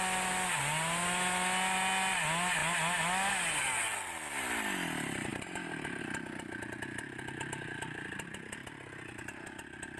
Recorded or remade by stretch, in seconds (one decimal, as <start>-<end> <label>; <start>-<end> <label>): 0.0-5.3 recorded; 5.3-6.0 remade; 6.0-10.0 recorded